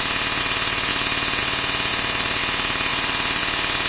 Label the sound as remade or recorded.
recorded